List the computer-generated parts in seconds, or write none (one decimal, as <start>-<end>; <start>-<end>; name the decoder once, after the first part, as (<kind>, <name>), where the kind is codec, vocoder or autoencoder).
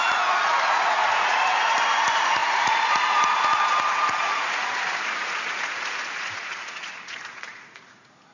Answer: 0.0-8.3 (vocoder, Vocos)